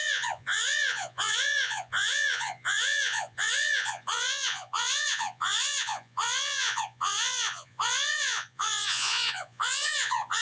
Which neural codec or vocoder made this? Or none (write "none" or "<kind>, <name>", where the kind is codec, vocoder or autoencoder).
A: vocoder, Vocos